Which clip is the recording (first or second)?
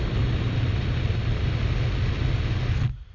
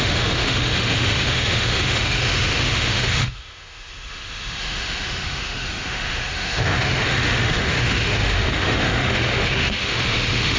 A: first